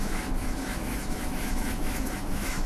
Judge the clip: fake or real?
fake